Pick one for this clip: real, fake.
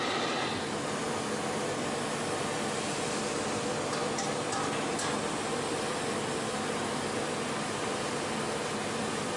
real